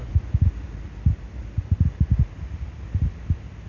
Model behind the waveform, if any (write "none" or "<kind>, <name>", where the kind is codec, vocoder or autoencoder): none